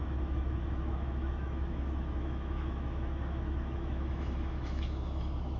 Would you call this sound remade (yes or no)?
yes